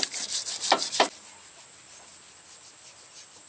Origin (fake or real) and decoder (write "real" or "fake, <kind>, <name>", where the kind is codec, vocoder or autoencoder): real